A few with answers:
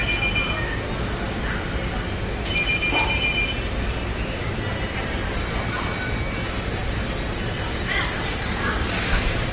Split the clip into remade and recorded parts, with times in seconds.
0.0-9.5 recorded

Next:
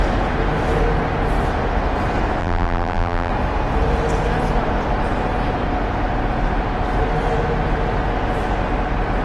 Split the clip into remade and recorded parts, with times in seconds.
0.0-2.4 recorded; 2.4-3.3 remade; 3.3-9.2 recorded

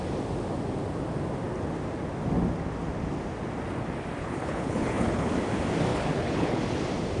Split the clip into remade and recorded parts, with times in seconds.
0.0-4.2 recorded; 4.2-5.3 remade; 5.3-5.9 recorded; 5.9-6.6 remade; 6.6-7.2 recorded

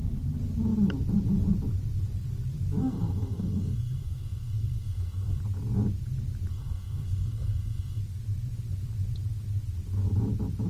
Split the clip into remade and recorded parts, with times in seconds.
0.0-2.8 recorded; 2.8-5.4 remade; 5.4-6.5 recorded; 6.5-8.0 remade; 8.0-10.7 recorded

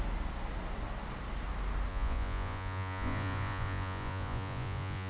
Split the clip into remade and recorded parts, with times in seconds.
0.0-1.9 recorded; 1.9-5.1 remade

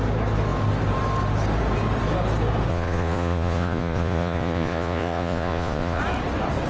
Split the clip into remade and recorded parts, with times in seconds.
0.0-2.7 recorded; 2.7-6.0 remade; 6.0-6.7 recorded

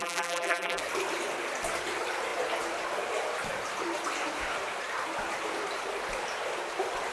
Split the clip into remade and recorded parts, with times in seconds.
0.0-0.8 remade; 0.8-7.1 recorded